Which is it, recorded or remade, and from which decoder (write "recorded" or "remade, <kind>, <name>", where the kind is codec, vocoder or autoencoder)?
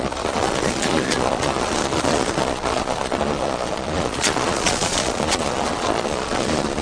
remade, vocoder, Vocos